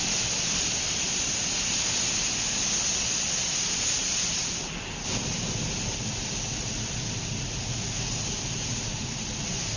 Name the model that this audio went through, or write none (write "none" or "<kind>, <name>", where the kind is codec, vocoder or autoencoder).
none